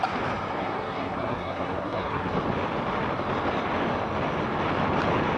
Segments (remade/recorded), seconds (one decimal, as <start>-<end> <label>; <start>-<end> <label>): 0.0-0.6 recorded; 0.6-2.3 remade; 2.3-5.4 recorded